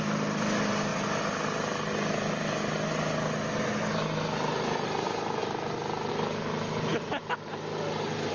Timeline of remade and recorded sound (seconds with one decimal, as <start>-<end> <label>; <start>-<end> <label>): 0.0-8.3 recorded